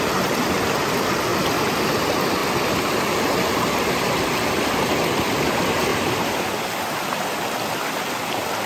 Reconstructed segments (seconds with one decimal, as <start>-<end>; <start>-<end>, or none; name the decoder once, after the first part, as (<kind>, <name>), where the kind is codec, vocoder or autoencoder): 5.9-6.5 (vocoder, BigVGAN v2)